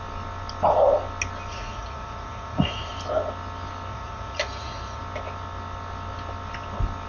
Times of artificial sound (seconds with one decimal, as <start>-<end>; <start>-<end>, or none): 1.5-2.9; 3.9-5.0